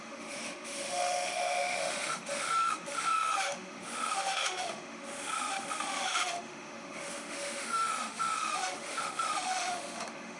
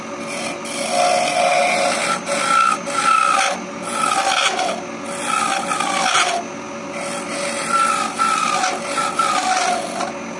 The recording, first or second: second